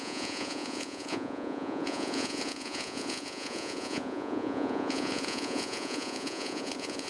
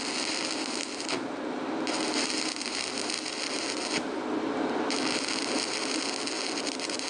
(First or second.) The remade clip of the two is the first